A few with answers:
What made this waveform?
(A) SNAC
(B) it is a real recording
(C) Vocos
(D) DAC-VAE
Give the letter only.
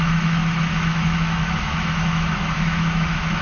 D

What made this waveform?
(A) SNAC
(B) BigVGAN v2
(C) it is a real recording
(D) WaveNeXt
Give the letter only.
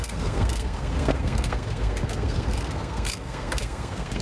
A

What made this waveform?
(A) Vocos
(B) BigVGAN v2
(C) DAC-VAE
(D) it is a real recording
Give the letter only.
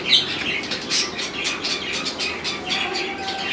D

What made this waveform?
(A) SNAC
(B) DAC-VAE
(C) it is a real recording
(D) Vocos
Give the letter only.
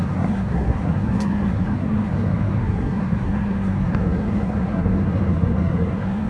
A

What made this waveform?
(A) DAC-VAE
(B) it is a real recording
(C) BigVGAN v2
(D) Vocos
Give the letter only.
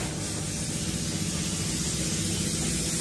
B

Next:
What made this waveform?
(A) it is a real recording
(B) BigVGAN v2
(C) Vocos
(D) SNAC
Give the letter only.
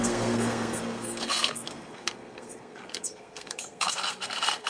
D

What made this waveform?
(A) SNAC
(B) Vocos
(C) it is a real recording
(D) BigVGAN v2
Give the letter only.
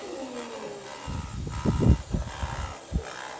C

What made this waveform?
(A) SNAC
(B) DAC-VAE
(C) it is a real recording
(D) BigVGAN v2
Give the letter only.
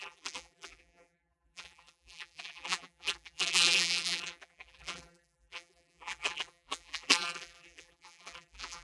D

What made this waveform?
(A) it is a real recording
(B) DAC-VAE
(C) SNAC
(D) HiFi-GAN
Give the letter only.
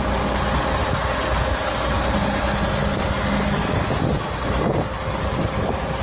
A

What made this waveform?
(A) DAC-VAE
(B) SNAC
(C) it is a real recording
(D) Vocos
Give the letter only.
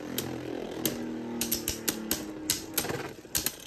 C